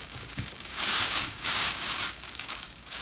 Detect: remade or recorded remade